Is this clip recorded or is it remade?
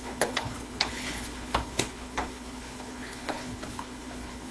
remade